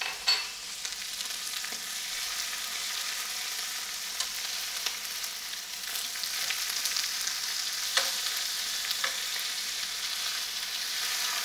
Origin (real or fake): real